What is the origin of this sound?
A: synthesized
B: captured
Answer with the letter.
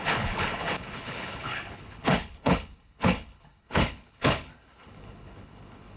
A